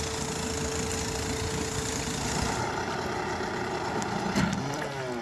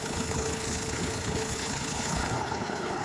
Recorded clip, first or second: first